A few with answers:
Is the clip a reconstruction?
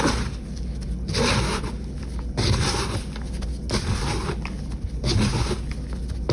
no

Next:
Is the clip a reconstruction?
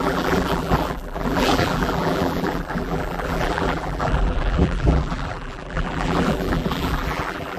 yes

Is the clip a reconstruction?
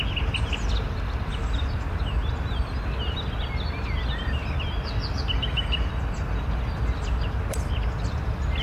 no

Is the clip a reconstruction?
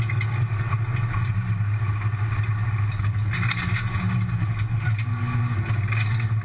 no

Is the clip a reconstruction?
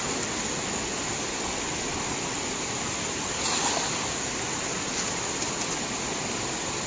no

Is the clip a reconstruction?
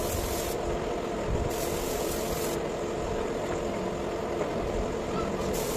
yes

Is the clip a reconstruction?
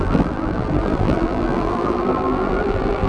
yes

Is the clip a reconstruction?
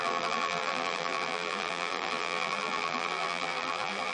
yes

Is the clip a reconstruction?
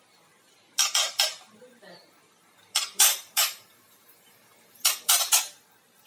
yes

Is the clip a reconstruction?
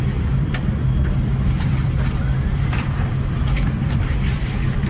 yes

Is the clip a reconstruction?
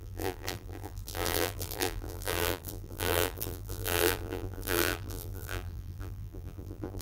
yes